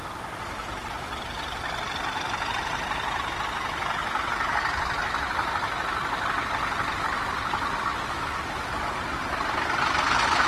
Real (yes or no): no